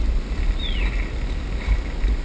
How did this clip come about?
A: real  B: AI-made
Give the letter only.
A